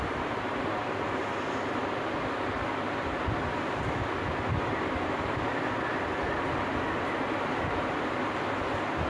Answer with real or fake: real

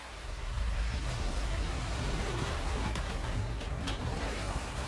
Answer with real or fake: fake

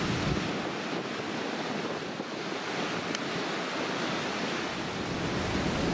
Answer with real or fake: real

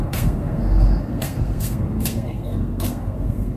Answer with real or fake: fake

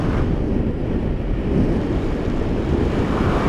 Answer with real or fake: real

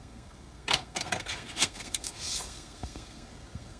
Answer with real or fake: fake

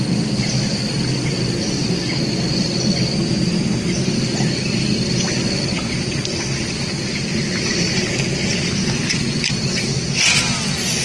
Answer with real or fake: real